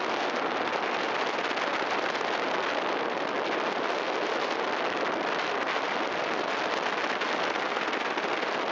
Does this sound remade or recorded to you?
recorded